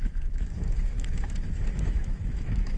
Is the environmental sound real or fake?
fake